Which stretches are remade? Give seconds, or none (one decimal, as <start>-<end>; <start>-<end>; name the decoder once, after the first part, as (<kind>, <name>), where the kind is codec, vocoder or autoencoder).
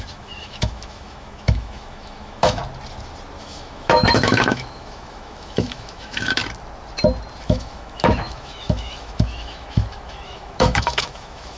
0.0-2.6 (autoencoder, DAC-VAE); 3.4-6.4; 7.4-11.6